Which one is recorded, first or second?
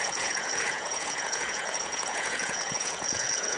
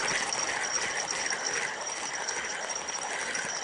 second